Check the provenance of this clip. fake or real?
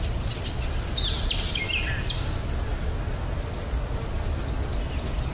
real